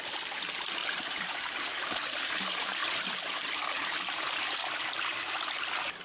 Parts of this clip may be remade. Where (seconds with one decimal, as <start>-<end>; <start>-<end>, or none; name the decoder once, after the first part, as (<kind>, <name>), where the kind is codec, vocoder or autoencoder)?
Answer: 0.0-4.6 (vocoder, BigVGAN v2); 5.2-6.0